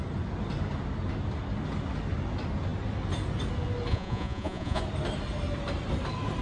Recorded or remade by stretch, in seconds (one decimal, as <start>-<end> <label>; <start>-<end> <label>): 0.0-3.9 recorded; 3.9-4.8 remade; 4.8-6.4 recorded